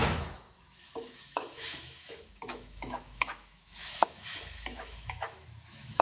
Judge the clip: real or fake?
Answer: fake